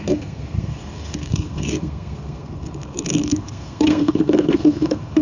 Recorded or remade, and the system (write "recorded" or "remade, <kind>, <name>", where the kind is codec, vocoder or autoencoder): remade, codec, SNAC